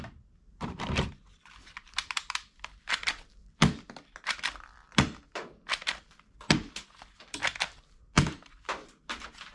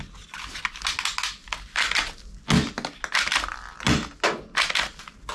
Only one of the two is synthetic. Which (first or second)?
first